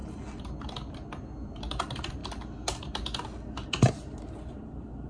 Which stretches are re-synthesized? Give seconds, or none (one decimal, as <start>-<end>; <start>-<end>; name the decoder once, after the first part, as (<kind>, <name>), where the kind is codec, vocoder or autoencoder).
1.5-2.2 (vocoder, BigVGAN v2); 3.7-5.1